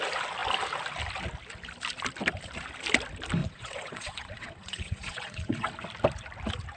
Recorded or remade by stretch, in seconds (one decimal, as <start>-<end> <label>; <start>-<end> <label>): 0.0-3.4 recorded; 3.4-5.7 remade; 5.7-6.8 recorded